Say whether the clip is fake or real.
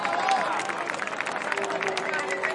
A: fake